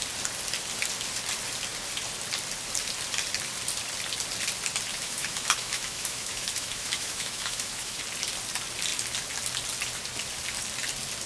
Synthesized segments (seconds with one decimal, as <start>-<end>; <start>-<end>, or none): 4.9-8.0